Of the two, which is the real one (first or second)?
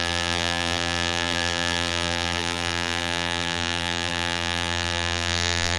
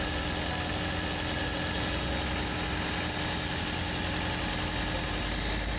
second